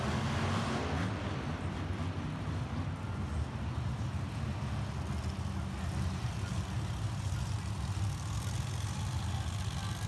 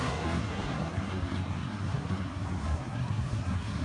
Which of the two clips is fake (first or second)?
second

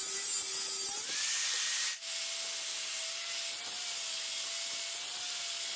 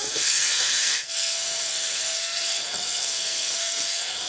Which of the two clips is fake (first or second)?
second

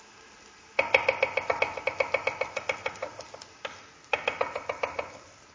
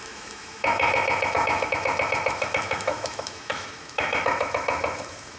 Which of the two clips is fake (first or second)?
second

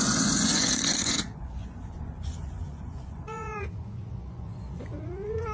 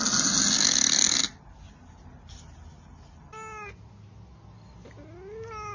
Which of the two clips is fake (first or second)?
first